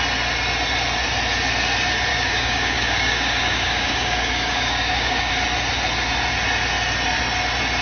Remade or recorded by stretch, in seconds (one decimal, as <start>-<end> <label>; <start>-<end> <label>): 0.0-2.1 recorded; 2.1-5.3 remade; 5.3-7.8 recorded